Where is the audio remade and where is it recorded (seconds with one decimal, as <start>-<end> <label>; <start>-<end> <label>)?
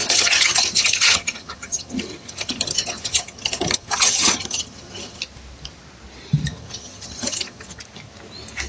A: 0.0-5.2 remade; 5.2-6.5 recorded; 6.5-7.8 remade; 7.8-8.7 recorded